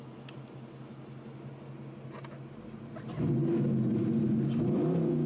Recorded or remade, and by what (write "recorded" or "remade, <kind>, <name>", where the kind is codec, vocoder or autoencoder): recorded